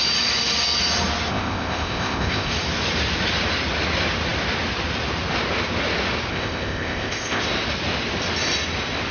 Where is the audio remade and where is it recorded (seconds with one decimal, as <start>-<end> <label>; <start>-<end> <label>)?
0.0-1.3 recorded; 1.3-2.5 remade; 2.5-6.3 recorded; 6.3-7.4 remade; 7.4-9.1 recorded